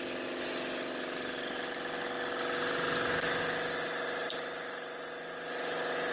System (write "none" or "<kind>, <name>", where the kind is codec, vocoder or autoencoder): none